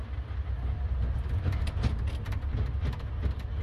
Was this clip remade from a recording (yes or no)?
no